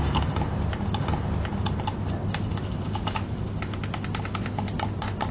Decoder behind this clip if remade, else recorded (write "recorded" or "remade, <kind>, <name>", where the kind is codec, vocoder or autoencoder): recorded